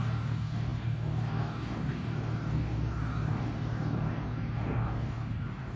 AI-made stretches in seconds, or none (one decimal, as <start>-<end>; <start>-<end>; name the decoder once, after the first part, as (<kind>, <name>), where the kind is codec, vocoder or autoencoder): 0.0-5.8 (codec, DAC)